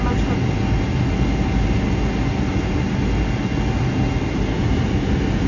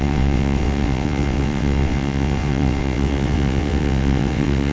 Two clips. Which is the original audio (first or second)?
first